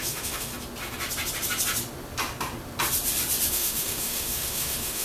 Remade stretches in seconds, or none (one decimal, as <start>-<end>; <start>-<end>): 0.0-0.5; 3.5-5.0